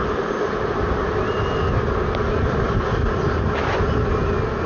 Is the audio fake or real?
real